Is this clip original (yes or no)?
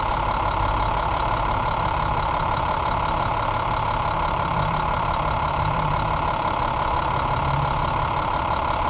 no